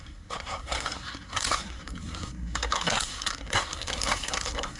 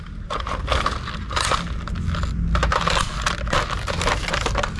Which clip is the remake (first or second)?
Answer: first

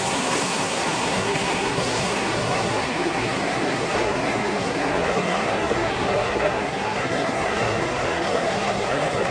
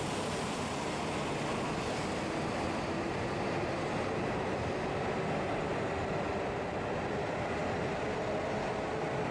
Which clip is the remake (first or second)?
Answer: first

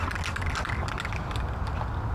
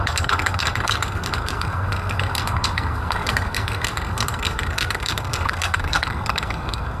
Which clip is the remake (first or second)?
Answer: second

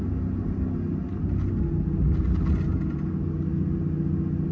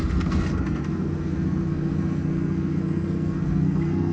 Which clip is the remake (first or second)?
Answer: second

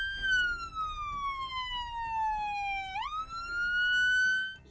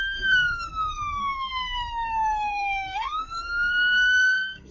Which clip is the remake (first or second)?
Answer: second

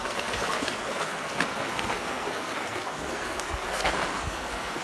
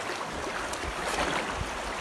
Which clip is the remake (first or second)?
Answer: first